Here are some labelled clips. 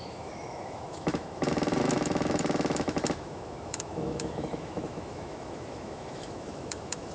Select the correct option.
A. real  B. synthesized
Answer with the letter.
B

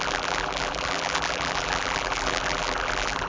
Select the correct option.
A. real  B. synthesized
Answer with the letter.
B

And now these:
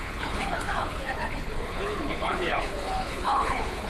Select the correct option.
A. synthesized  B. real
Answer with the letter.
A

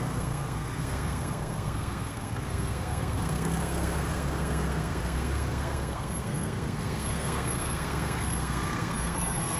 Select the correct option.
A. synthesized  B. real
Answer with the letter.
A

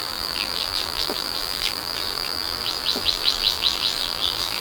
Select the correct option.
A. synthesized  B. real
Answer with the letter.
A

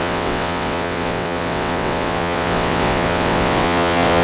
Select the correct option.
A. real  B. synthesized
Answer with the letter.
B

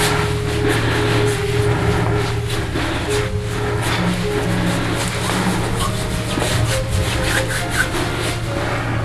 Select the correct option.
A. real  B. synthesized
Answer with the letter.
A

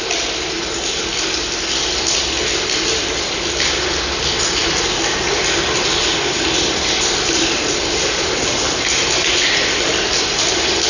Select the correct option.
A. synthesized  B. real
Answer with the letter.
B